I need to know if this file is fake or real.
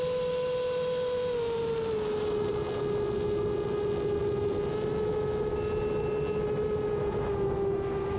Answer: real